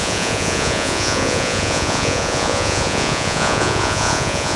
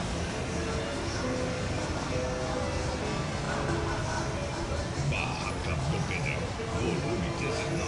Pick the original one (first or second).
second